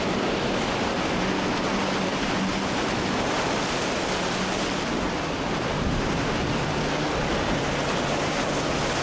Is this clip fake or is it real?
real